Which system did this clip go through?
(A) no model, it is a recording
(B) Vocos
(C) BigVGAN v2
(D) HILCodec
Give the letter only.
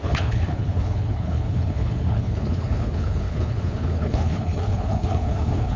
D